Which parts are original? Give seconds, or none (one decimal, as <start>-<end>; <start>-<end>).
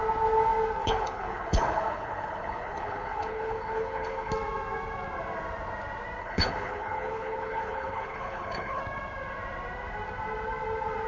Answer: 0.0-0.8; 4.3-6.2; 8.8-11.1